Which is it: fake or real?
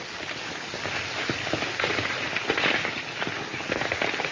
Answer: real